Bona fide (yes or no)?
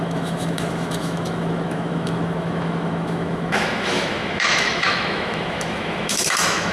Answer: no